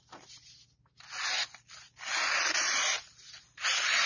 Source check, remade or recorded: recorded